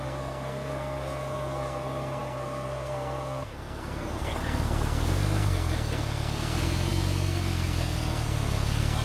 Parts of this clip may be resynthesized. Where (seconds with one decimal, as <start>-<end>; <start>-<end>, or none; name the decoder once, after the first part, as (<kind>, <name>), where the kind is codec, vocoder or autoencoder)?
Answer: 0.0-9.0 (codec, SNAC)